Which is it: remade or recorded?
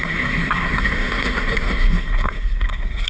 remade